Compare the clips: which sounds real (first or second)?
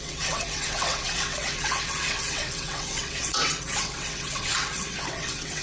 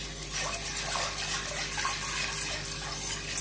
second